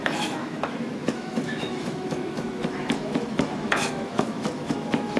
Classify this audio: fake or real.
fake